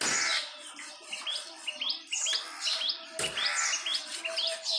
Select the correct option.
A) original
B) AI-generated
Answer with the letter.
A